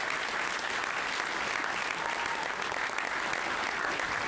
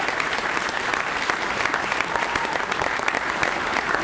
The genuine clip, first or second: first